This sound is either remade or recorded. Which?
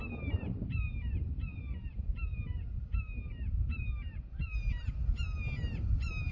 recorded